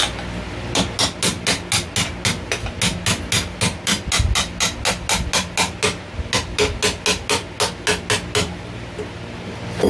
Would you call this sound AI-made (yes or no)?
no